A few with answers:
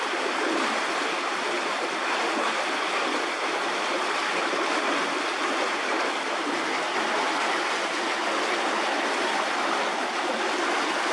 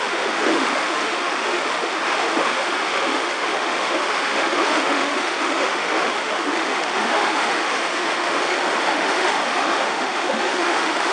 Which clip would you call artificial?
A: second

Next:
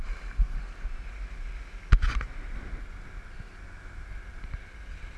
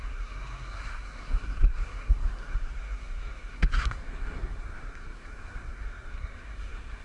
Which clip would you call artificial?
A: second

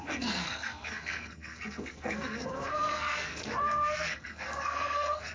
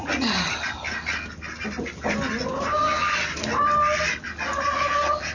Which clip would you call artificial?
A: first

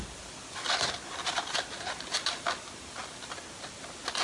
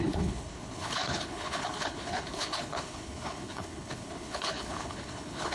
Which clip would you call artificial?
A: second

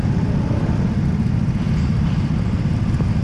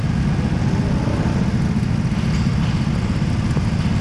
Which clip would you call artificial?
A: first